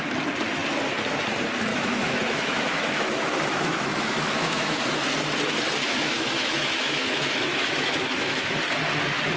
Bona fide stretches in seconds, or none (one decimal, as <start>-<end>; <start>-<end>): 0.0-1.7; 4.8-5.8; 8.6-9.4